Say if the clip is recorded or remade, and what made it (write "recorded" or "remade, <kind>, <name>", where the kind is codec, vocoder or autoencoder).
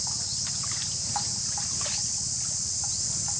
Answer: recorded